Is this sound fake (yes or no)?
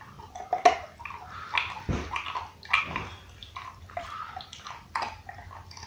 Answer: no